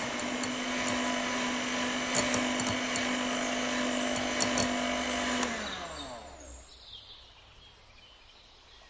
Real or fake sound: real